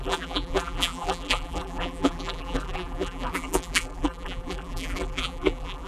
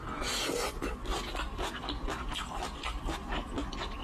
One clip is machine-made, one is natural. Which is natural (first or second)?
second